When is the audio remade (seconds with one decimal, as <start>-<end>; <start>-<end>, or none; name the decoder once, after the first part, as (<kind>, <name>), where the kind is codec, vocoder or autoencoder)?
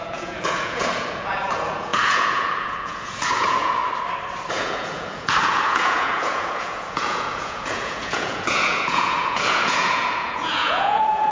0.0-3.8 (vocoder, Vocos); 4.5-11.3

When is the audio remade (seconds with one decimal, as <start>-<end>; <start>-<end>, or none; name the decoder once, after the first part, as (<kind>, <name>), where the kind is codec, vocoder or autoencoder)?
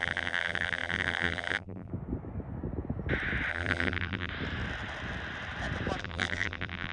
0.0-1.9 (vocoder, BigVGAN v2); 3.5-4.3; 6.0-6.9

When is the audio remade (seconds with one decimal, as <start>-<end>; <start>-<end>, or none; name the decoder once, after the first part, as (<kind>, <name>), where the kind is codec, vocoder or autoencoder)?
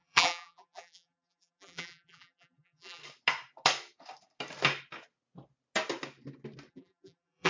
0.0-3.0 (vocoder, BigVGAN v2); 6.7-7.5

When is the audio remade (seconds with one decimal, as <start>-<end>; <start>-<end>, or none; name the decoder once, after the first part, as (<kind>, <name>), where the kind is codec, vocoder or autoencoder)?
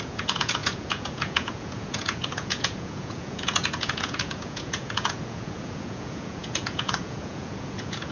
0.0-8.1 (vocoder, Vocos)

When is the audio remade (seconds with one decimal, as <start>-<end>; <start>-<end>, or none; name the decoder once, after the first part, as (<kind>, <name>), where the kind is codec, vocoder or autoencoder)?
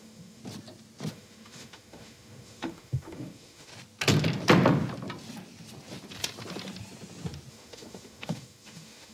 0.0-0.4 (autoencoder, DAC-VAE); 1.1-3.7; 7.5-9.1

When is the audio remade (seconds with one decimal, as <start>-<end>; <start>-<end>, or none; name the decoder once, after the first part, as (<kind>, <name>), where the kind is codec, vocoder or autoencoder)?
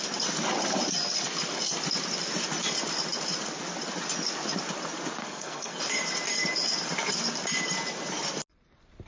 5.2-5.8 (codec, SNAC)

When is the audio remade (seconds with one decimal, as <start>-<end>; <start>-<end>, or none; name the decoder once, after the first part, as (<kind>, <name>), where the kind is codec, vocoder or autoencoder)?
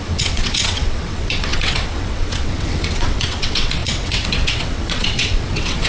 0.0-5.9 (vocoder, WaveNeXt)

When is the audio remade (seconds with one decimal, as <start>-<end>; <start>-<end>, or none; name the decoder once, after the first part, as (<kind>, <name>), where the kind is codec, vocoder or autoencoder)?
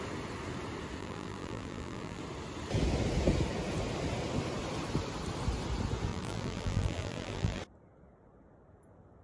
1.0-2.2 (vocoder, BigVGAN v2); 6.1-7.6